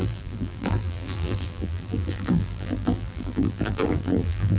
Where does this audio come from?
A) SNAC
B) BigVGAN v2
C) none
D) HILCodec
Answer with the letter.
B